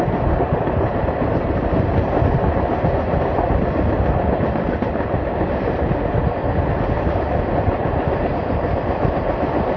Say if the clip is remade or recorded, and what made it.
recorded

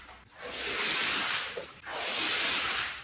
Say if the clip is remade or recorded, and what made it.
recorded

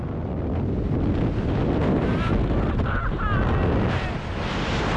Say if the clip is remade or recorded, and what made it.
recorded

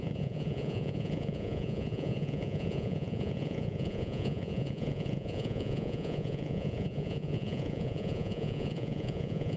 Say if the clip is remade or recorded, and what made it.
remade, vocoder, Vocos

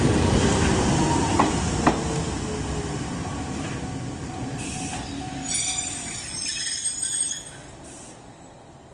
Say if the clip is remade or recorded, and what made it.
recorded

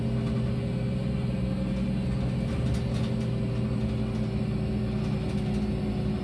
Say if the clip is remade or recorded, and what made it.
recorded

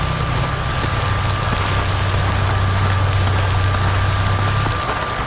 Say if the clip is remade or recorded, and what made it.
recorded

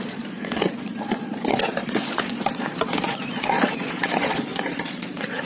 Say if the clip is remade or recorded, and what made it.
remade, vocoder, Vocos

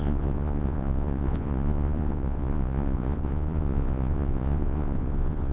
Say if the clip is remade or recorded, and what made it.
remade, vocoder, Vocos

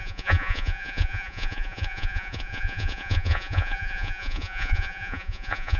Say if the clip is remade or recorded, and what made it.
remade, vocoder, Vocos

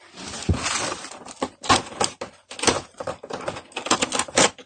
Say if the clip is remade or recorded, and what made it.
recorded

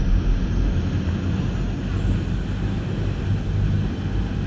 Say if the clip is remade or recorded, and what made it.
recorded